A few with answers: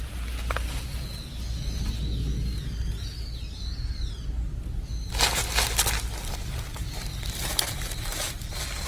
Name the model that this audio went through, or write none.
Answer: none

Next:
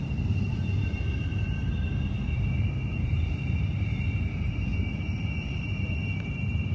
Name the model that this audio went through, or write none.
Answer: vocoder, BigVGAN v2